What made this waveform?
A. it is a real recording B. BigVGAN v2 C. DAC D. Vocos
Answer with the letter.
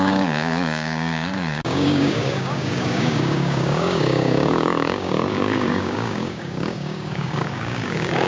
C